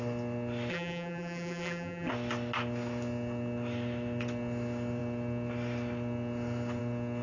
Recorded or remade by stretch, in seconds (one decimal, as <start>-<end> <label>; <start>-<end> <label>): 0.0-0.7 recorded; 0.7-2.1 remade; 2.1-7.2 recorded